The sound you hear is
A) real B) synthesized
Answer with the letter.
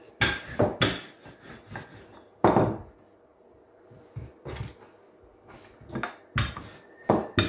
A